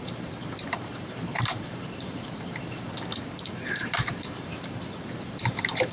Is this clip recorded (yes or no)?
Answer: no